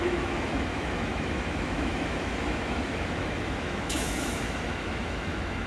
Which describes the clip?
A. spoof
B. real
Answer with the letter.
A